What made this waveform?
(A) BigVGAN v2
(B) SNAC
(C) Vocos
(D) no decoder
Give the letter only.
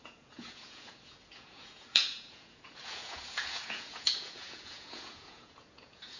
C